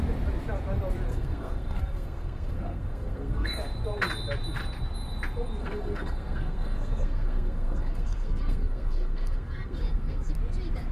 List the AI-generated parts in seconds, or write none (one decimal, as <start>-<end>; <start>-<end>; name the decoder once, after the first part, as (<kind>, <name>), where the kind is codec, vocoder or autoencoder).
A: 1.1-3.6 (codec, SNAC); 5.6-10.3